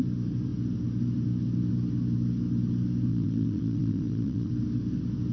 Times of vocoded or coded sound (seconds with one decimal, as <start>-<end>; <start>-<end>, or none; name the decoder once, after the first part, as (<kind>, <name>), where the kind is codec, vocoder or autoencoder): 3.1-4.5 (vocoder, Vocos)